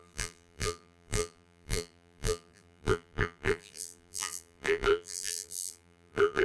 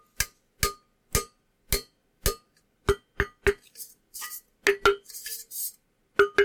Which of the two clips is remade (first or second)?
first